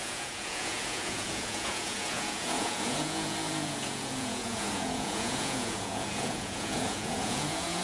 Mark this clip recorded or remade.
remade